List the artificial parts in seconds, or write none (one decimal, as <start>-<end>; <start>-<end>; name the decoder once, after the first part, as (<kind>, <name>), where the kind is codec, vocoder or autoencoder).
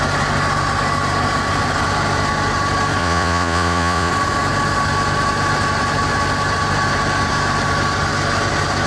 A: 3.0-4.1 (vocoder, Vocos)